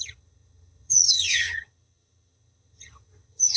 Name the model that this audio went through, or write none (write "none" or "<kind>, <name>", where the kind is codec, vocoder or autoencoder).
vocoder, HiFi-GAN